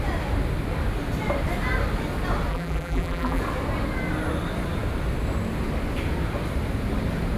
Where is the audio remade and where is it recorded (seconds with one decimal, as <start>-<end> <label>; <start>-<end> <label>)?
0.0-2.5 recorded; 2.5-3.4 remade; 3.4-7.4 recorded

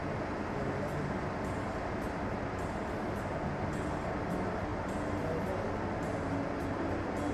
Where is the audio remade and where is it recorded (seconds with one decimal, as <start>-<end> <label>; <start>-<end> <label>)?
0.0-7.3 recorded

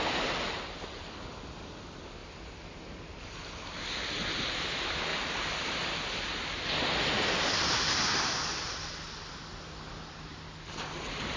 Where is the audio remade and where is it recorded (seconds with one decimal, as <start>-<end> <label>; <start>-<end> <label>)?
0.0-11.4 recorded

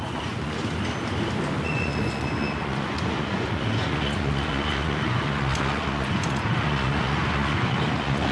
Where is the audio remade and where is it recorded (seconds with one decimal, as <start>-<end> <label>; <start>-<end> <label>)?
0.0-0.6 remade; 0.6-1.6 recorded; 1.6-8.3 remade